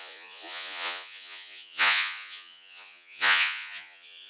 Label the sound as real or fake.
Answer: fake